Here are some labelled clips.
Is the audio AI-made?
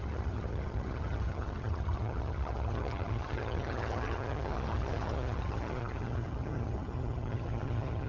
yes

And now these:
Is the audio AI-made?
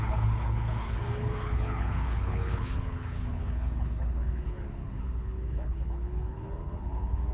yes